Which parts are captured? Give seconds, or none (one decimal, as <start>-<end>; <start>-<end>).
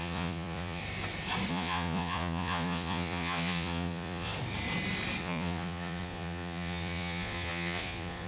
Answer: 0.8-1.5; 4.3-5.2